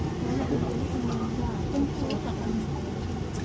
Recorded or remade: recorded